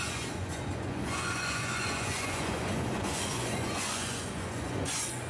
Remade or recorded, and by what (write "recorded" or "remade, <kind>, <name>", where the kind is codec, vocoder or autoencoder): remade, vocoder, Vocos